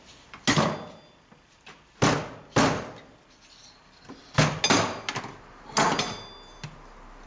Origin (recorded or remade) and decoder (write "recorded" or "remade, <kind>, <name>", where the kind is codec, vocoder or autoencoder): recorded